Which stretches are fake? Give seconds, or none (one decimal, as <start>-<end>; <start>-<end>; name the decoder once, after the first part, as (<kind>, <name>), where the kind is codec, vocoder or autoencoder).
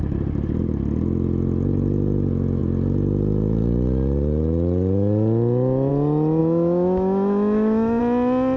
6.4-8.0 (autoencoder, DAC-VAE)